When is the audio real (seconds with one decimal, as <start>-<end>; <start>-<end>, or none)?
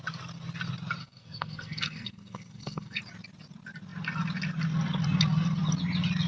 0.0-1.0; 3.0-6.3